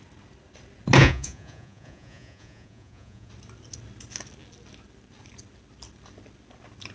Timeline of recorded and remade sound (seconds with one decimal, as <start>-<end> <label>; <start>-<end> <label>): 0.0-1.0 recorded; 1.0-3.3 remade; 3.3-6.9 recorded